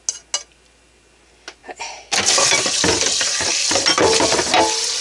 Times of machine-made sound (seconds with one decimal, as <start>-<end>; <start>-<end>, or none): none